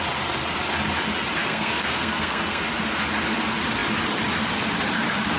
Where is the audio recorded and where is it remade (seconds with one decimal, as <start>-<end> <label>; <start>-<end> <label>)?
0.0-1.4 recorded; 1.4-2.6 remade; 2.6-5.4 recorded